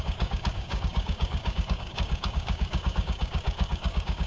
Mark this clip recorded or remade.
remade